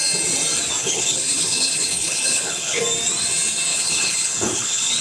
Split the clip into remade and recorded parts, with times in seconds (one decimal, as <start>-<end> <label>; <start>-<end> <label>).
0.0-0.8 recorded; 0.8-2.8 remade; 2.8-3.7 recorded; 3.7-5.0 remade